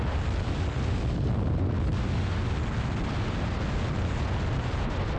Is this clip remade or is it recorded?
recorded